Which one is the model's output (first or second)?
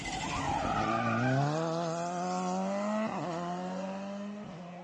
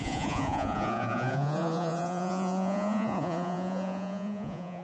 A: second